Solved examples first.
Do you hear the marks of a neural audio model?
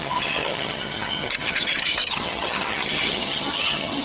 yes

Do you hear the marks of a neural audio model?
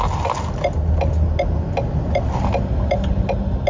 no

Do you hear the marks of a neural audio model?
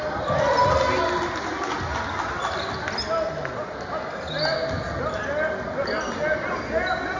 no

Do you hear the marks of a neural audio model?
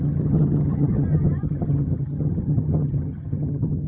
yes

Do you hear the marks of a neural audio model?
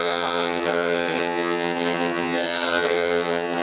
yes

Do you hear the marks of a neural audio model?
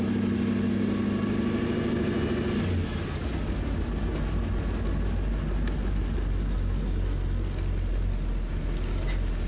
no